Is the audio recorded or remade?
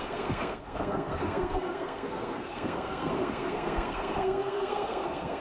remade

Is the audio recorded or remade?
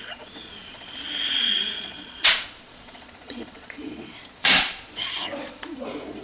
remade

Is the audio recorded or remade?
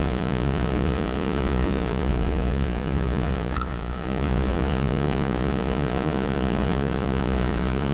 remade